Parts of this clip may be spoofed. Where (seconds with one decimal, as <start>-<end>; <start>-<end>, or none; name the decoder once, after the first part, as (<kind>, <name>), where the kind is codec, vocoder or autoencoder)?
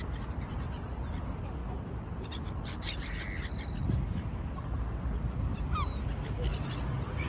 none